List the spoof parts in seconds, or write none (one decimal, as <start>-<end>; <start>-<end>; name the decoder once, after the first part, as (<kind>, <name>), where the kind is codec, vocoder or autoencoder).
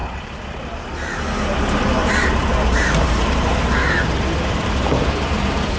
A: 0.0-0.8 (vocoder, BigVGAN v2); 2.0-5.8